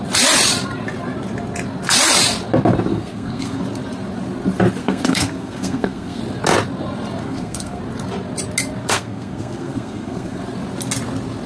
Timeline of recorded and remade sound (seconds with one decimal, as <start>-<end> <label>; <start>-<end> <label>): 0.0-2.9 recorded; 2.9-3.6 remade; 3.6-4.8 recorded; 4.8-6.2 remade; 6.2-7.2 recorded; 7.2-7.8 remade; 7.8-8.8 recorded; 8.8-10.4 remade; 10.4-11.5 recorded